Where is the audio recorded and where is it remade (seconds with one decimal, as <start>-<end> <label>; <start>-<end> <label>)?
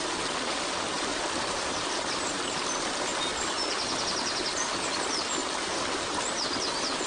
0.0-1.1 recorded; 1.1-2.6 remade; 2.6-7.1 recorded